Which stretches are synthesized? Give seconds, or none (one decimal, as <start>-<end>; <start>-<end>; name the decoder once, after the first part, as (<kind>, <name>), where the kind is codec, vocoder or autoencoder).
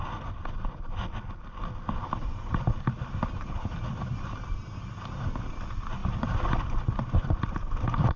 6.0-8.2 (vocoder, BigVGAN v2)